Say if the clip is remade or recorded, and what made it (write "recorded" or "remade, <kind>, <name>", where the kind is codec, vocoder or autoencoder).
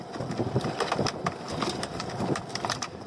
recorded